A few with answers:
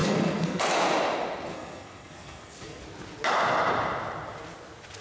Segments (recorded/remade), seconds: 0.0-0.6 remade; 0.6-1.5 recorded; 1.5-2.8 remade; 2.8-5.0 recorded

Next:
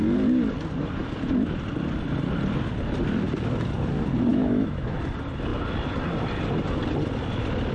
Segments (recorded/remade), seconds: 0.0-4.3 recorded; 4.3-5.0 remade; 5.0-7.7 recorded

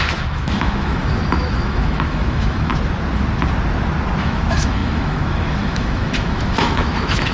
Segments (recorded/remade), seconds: 0.0-2.7 remade; 2.7-4.2 recorded; 4.2-7.3 remade

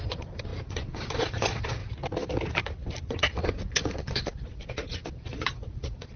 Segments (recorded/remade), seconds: 0.0-1.8 remade; 1.8-3.1 recorded; 3.1-6.2 remade

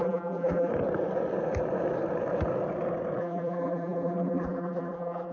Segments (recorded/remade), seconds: 0.0-0.7 remade; 0.7-3.2 recorded; 3.2-5.3 remade

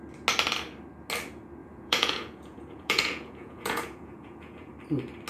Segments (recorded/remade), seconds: 0.0-1.6 recorded; 1.6-4.7 remade; 4.7-5.3 recorded